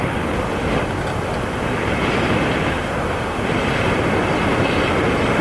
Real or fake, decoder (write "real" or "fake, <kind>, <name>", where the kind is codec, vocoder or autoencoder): real